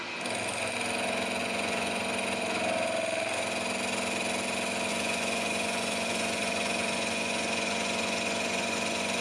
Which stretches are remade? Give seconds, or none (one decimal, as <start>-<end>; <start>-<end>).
1.4-2.0; 4.9-9.2